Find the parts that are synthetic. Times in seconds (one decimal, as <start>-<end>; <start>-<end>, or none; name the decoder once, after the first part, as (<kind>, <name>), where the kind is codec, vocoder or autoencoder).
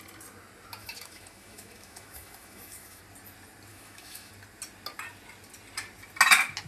0.8-3.0 (autoencoder, DAC-VAE); 3.7-4.3